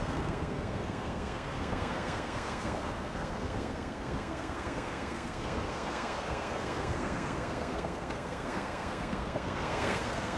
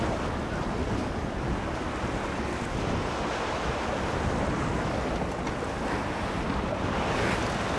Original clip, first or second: second